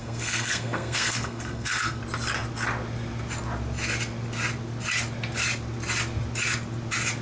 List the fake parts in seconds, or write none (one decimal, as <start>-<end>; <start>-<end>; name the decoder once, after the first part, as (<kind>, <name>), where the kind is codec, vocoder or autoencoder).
0.0-2.0 (codec, SNAC)